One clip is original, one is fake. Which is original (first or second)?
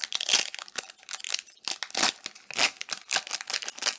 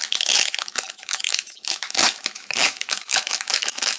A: first